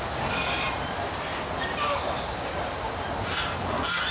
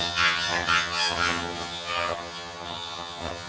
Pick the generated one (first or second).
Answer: second